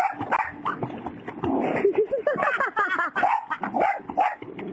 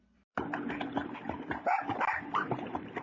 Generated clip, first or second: second